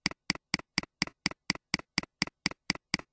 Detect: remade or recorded recorded